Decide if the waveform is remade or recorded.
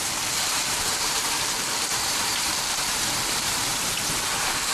remade